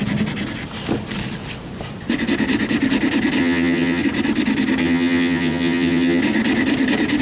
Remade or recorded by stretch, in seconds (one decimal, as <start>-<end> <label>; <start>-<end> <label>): 0.0-3.4 recorded; 3.4-4.0 remade; 4.0-4.8 recorded; 4.8-6.2 remade; 6.2-7.2 recorded